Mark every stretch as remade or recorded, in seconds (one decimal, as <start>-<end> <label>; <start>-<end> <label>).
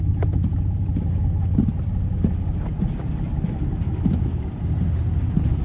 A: 0.0-0.5 remade; 0.5-3.9 recorded; 3.9-4.3 remade; 4.3-5.6 recorded